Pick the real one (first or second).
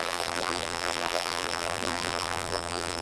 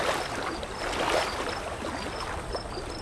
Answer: second